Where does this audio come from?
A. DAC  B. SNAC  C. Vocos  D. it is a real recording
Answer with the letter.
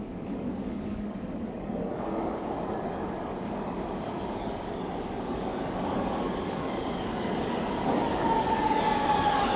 A